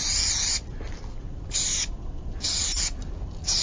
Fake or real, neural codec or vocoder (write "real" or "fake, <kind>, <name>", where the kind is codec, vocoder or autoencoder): real